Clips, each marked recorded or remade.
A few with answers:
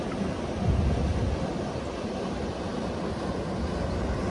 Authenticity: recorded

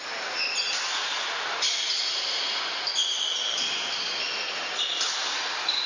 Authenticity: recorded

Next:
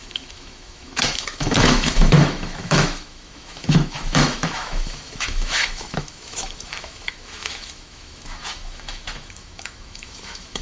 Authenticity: remade